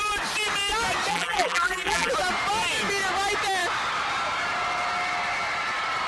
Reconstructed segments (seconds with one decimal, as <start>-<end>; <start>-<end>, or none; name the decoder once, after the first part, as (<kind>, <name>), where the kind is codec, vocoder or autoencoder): 1.1-2.1 (vocoder, BigVGAN v2)